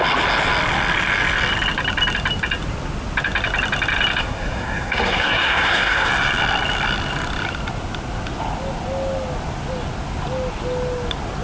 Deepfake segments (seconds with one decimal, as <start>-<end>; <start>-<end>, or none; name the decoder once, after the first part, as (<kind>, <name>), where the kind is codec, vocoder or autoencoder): 4.2-6.1 (codec, SNAC)